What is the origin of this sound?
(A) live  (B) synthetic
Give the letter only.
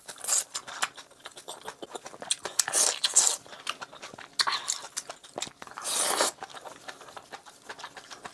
A